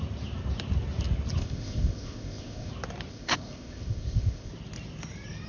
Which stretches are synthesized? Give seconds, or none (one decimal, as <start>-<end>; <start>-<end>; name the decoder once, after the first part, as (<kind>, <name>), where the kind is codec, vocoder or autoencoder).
1.4-2.7 (codec, ZipCodec); 3.1-4.5

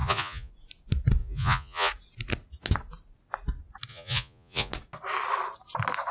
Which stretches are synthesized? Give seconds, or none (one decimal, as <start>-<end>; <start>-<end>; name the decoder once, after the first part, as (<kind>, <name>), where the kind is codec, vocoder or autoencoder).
0.0-0.5 (vocoder, Vocos); 1.2-1.9; 3.9-4.7

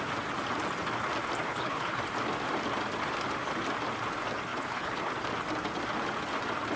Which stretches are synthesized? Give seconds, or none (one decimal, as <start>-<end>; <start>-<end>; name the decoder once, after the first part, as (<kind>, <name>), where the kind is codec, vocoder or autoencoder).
1.5-2.0 (codec, HILCodec); 4.5-5.1

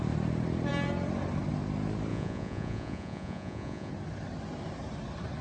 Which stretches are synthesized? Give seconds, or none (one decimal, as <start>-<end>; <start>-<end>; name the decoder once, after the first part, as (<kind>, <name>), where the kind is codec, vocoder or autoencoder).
2.1-3.9 (vocoder, Vocos)

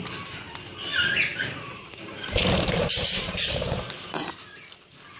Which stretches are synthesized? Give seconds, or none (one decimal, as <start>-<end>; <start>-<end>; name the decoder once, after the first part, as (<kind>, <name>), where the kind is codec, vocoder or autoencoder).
1.3-4.4 (vocoder, BigVGAN v2)